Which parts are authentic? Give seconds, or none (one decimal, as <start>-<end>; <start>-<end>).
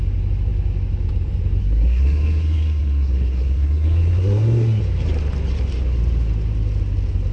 0.0-1.6; 4.8-7.3